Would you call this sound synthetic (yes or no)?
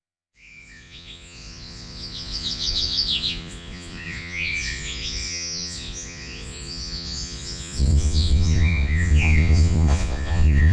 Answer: yes